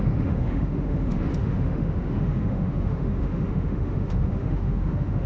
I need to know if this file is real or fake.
fake